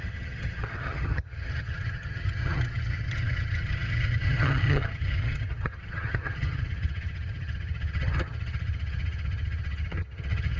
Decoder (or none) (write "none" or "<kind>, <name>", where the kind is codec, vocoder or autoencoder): vocoder, HiFi-GAN